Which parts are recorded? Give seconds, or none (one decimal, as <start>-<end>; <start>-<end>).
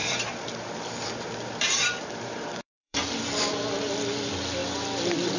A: 3.2-5.4